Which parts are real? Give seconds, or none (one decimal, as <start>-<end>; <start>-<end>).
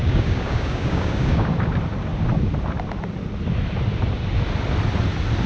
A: 1.5-5.5